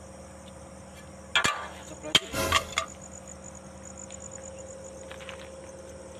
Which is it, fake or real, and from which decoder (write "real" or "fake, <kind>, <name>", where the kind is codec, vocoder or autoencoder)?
real